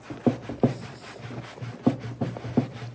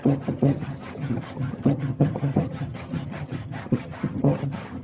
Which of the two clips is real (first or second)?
first